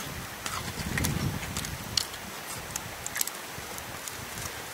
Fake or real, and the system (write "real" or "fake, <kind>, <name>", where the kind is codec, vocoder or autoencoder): real